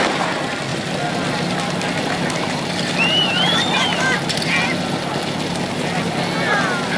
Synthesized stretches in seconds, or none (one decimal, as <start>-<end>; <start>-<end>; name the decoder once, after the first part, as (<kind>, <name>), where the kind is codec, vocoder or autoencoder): none